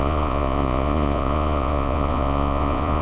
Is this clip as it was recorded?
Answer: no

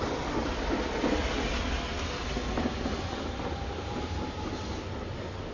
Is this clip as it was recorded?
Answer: yes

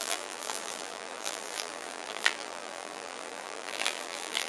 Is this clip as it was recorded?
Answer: no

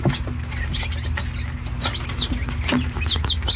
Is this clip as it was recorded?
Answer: yes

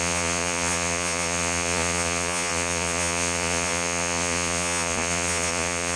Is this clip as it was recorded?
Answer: no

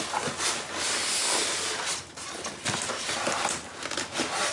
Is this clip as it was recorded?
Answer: yes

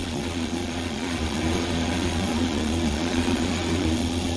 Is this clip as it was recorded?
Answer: no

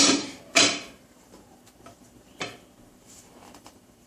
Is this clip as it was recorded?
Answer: no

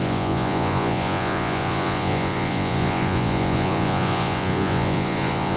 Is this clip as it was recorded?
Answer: no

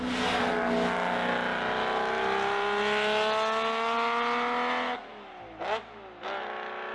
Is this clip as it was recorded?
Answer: yes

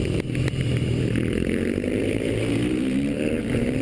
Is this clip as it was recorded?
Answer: no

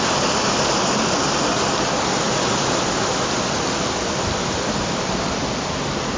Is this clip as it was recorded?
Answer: yes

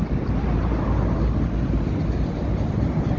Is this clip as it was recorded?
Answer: yes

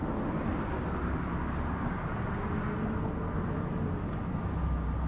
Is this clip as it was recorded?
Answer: yes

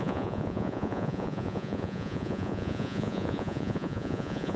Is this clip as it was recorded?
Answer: no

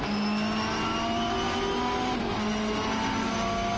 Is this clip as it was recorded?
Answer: yes